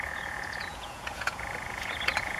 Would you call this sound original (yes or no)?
no